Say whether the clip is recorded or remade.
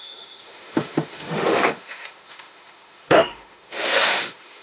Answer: remade